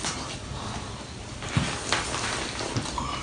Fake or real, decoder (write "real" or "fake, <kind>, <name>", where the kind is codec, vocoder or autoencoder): fake, vocoder, BigVGAN v2